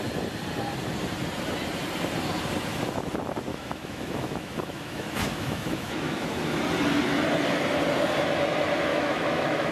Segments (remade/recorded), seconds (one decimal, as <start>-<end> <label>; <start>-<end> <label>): 0.0-3.5 recorded; 3.5-6.6 remade; 6.6-8.9 recorded; 8.9-9.7 remade